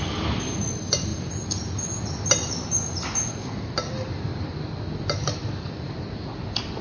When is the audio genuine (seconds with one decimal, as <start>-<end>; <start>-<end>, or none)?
0.0-6.8

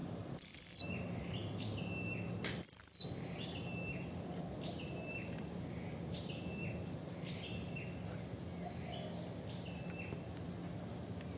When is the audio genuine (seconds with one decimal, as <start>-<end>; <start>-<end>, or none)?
0.0-11.4

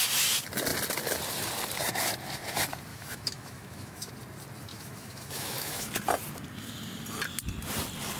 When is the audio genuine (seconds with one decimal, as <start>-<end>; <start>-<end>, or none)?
0.0-2.9; 4.1-4.7; 5.9-8.2